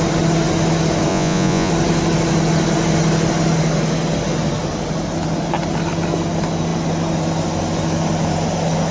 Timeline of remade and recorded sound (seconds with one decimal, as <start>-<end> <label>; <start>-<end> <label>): 0.0-1.1 recorded; 1.1-1.7 remade; 1.7-8.9 recorded